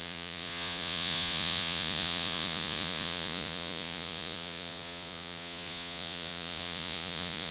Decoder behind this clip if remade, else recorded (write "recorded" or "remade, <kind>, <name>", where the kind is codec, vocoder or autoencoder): remade, vocoder, Vocos